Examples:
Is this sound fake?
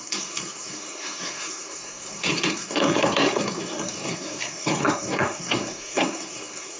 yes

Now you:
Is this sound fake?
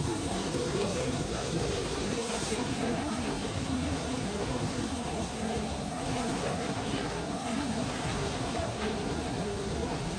yes